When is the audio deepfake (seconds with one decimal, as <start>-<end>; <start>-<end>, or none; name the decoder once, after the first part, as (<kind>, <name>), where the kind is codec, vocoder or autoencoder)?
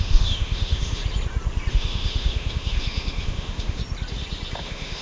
0.0-1.0 (autoencoder, DAC-VAE); 1.7-3.8; 4.6-5.0